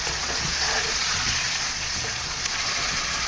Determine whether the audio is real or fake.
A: fake